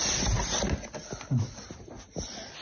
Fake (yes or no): no